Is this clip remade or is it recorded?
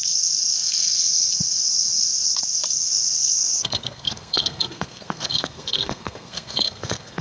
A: remade